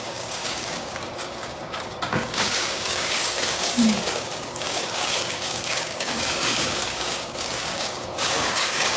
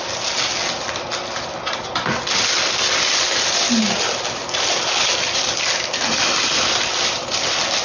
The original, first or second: second